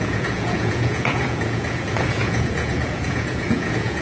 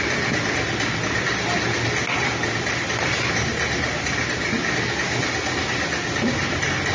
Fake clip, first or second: first